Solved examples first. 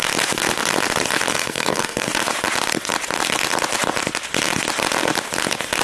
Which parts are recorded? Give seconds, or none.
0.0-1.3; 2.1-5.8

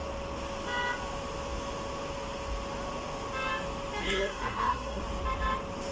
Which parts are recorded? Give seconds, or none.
0.0-4.0; 5.0-5.9

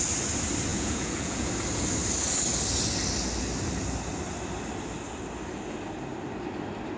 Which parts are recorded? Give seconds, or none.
0.0-0.7; 1.5-7.0